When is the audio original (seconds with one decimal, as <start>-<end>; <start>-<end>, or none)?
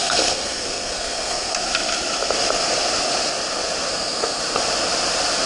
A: 1.6-3.9; 4.4-5.5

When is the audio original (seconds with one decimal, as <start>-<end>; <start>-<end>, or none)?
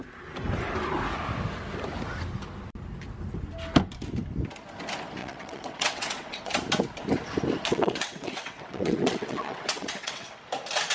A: 0.0-5.2; 6.5-7.7; 10.4-10.9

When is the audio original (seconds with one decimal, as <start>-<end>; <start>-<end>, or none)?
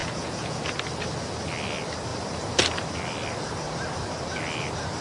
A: 0.6-5.0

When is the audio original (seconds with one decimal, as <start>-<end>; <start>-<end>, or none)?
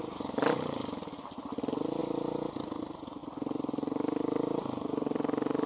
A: 0.0-5.7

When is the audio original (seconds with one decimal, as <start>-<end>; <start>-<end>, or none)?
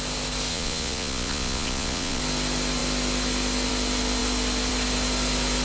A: 0.0-0.5; 2.2-5.6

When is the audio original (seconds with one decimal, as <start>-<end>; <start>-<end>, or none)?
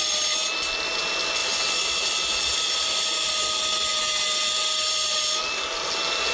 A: 0.0-6.3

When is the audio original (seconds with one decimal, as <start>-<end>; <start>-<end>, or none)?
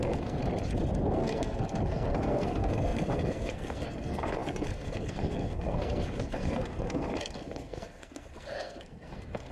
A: 0.4-1.0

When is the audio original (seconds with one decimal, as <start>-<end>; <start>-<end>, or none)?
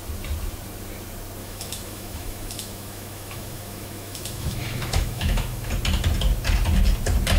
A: 0.0-1.4; 5.7-7.4